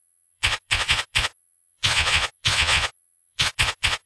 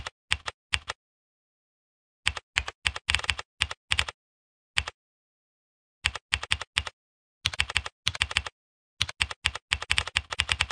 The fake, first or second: first